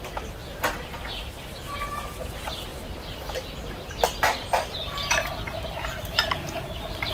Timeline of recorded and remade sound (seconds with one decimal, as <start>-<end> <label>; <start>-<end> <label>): 0.0-0.4 recorded; 0.4-2.3 remade; 2.3-2.7 recorded; 2.7-7.1 remade